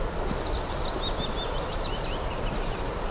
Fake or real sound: real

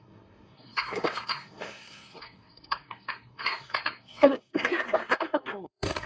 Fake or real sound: fake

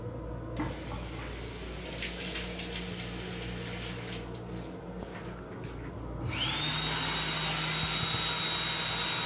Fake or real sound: real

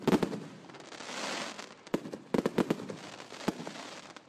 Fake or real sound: real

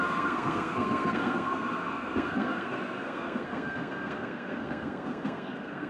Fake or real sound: fake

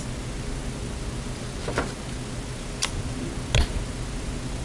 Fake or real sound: real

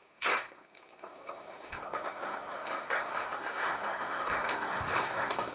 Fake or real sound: fake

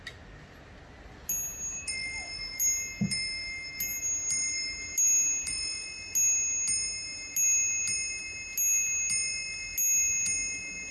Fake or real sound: real